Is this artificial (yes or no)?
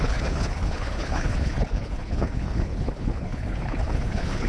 yes